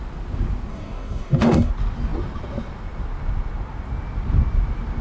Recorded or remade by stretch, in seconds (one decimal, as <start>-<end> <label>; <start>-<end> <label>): 0.0-0.7 recorded; 0.7-1.7 remade; 1.7-5.0 recorded